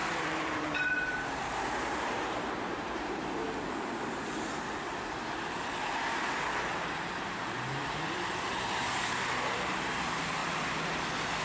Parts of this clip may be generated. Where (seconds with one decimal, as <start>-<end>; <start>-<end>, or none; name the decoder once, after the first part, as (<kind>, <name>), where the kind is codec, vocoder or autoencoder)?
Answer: 0.0-3.4 (vocoder, BigVGAN v2); 7.2-10.4